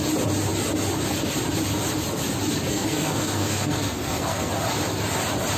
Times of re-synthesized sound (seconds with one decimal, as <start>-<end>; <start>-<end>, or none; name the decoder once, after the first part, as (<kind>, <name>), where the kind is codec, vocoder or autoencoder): 2.7-4.5 (codec, SNAC)